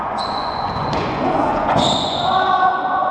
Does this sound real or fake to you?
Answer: fake